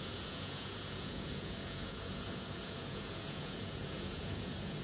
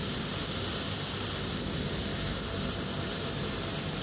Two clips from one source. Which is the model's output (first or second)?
first